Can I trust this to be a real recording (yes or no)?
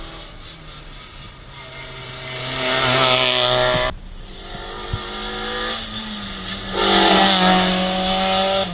yes